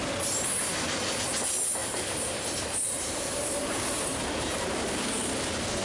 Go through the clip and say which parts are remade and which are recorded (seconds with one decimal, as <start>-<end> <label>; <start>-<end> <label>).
0.0-0.7 recorded; 0.7-1.2 remade; 1.2-1.8 recorded; 1.8-5.3 remade; 5.3-5.8 recorded